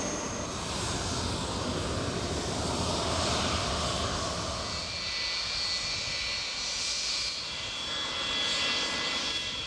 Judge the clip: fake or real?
real